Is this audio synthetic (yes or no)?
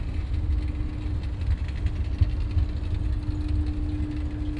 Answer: no